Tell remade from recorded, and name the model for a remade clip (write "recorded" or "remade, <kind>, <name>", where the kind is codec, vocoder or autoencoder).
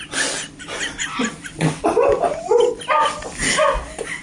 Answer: recorded